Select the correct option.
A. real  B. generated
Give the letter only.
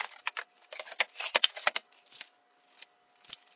A